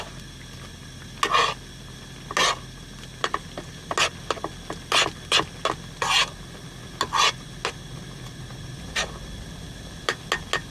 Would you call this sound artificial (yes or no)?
no